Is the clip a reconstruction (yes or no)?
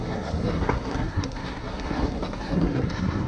yes